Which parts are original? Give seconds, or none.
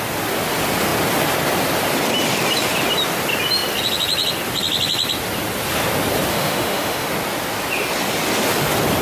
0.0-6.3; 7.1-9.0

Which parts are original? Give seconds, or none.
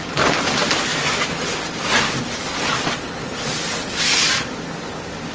0.0-5.3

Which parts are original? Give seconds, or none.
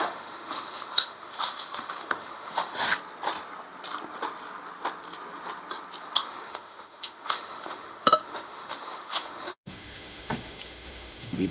2.9-6.2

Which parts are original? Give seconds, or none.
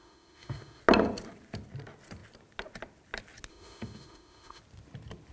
0.8-3.5; 4.6-5.3